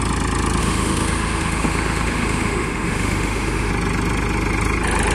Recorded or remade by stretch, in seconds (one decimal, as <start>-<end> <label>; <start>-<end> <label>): 0.0-0.6 recorded; 0.6-3.7 remade; 3.7-5.1 recorded